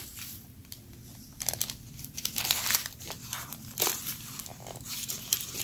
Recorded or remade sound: remade